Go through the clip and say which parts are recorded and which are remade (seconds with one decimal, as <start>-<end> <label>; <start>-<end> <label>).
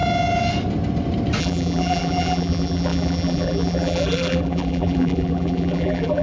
0.0-1.4 recorded; 1.4-6.2 remade